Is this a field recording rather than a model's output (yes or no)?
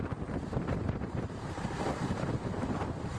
no